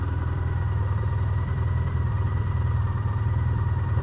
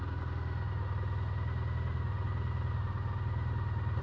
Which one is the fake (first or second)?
first